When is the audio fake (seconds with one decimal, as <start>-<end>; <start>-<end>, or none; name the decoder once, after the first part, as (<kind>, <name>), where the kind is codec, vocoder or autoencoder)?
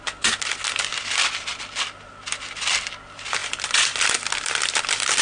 none